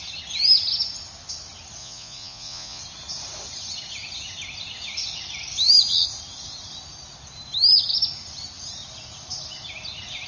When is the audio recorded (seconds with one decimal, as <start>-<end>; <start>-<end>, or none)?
0.0-1.8; 2.8-10.3